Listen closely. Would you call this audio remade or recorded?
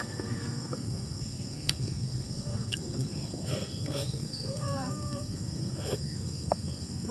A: remade